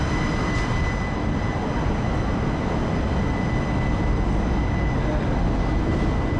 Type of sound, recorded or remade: recorded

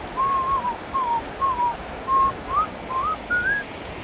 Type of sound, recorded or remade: remade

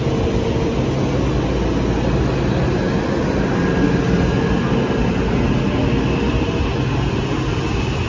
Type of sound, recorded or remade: recorded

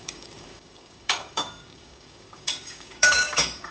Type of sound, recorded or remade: remade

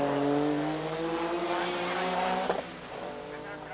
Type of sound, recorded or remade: recorded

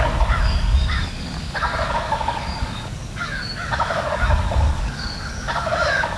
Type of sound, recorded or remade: remade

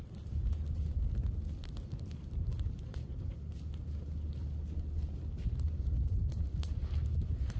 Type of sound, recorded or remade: recorded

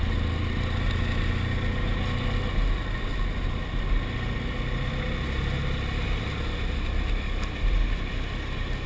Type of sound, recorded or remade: recorded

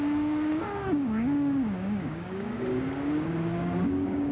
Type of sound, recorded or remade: remade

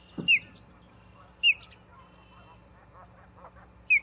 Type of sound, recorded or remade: recorded